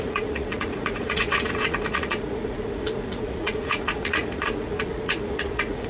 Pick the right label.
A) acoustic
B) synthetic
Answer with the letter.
B